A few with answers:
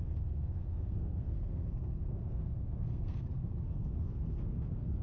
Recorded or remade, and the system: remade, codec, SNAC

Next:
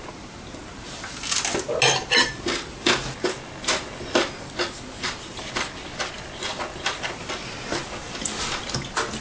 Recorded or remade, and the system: recorded